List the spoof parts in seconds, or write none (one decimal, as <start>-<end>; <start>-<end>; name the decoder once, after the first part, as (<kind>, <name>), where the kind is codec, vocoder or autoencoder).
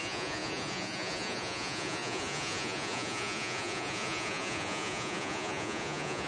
0.0-6.3 (vocoder, Vocos)